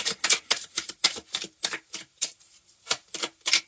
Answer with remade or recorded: remade